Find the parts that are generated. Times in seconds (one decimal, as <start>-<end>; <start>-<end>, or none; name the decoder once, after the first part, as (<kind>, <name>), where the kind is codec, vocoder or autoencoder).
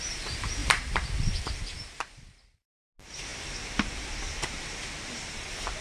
0.6-1.4 (vocoder, BigVGAN v2)